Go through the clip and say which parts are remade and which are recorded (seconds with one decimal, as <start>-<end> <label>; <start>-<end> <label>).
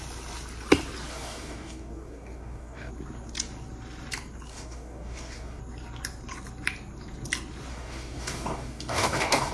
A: 0.0-1.1 recorded; 1.1-2.9 remade; 2.9-4.5 recorded; 4.5-5.6 remade; 5.6-7.7 recorded; 7.7-9.5 remade